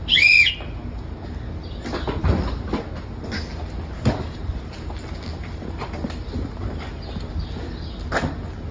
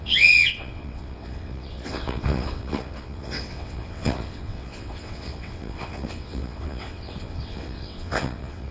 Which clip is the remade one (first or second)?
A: second